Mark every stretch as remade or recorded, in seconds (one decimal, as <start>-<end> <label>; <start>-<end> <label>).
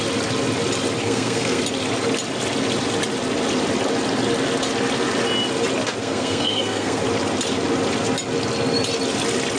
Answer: 0.0-1.0 recorded; 1.0-1.6 remade; 1.6-6.0 recorded; 6.0-7.0 remade; 7.0-9.6 recorded